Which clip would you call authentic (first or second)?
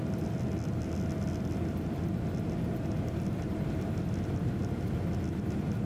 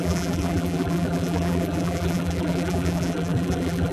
first